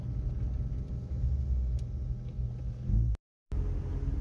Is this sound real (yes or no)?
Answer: yes